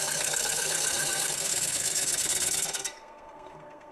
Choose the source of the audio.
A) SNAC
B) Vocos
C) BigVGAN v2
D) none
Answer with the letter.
A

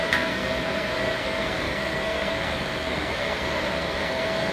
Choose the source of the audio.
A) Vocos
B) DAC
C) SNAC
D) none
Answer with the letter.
C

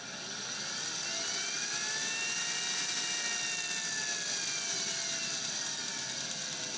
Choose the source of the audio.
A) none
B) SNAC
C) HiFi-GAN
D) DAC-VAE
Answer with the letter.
A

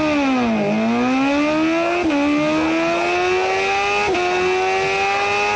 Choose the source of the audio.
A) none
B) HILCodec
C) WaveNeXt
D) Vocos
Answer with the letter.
A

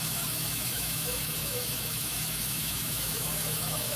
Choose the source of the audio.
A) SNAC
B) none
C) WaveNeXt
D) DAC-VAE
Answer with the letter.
D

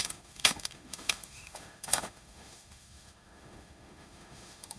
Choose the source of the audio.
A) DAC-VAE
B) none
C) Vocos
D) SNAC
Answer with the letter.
A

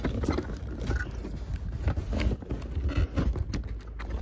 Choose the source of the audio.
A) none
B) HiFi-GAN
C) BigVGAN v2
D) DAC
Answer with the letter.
A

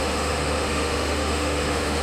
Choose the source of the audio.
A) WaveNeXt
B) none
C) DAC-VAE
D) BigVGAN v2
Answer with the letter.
C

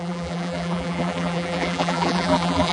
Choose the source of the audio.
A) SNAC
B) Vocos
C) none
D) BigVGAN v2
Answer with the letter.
D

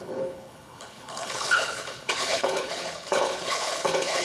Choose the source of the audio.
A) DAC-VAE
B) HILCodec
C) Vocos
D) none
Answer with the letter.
B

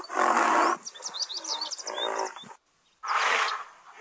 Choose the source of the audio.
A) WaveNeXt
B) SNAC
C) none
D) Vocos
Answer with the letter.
C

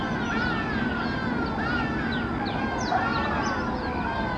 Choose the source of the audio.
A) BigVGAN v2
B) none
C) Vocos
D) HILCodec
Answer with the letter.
B